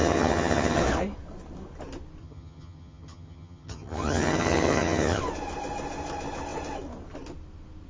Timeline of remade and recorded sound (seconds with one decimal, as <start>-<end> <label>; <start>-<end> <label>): 0.0-0.8 remade; 0.8-2.2 recorded; 2.2-5.2 remade; 5.2-7.9 recorded